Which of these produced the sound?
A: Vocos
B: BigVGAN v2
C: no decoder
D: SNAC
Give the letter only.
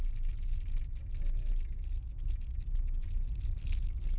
C